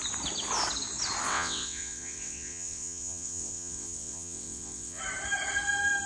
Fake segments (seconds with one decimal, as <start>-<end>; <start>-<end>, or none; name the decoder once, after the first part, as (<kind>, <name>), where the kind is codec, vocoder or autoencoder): 1.3-5.0 (vocoder, WaveNeXt)